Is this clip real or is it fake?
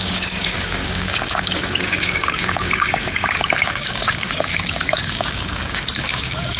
fake